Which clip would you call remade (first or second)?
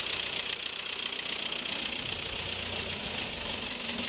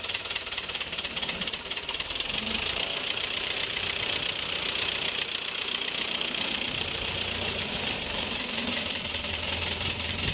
second